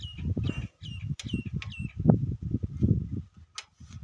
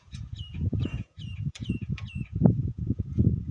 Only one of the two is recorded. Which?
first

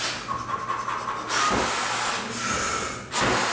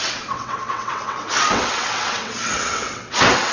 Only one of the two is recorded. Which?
first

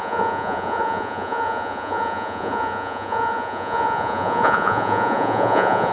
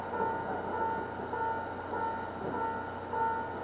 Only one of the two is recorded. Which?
second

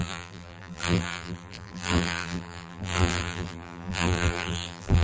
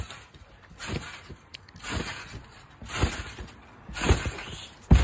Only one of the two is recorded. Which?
second